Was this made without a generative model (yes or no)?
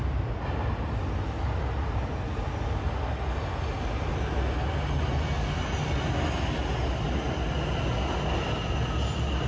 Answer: yes